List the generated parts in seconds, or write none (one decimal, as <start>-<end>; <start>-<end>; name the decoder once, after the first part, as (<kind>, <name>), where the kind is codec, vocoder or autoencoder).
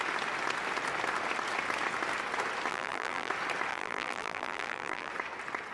2.7-3.3 (vocoder, BigVGAN v2); 3.7-5.1